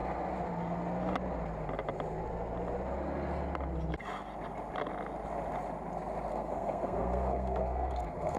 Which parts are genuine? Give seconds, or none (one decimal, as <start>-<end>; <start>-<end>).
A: 0.0-6.3